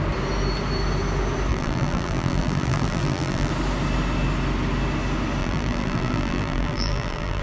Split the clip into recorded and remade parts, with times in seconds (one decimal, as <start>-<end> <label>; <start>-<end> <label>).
0.0-1.5 recorded; 1.5-3.5 remade; 3.5-5.4 recorded; 5.4-7.4 remade